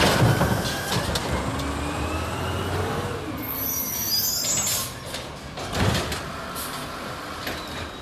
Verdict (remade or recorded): recorded